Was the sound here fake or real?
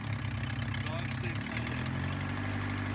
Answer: real